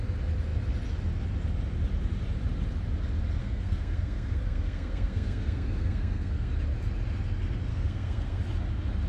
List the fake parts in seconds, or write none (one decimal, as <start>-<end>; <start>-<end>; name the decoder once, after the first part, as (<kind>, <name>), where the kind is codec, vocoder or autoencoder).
3.4-6.5 (codec, SNAC); 7.7-8.4